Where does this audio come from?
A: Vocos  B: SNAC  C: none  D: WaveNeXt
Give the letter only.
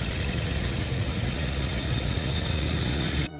A